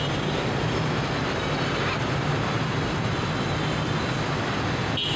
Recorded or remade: recorded